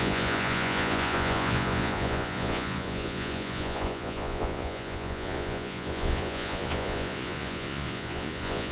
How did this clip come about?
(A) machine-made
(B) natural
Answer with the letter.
A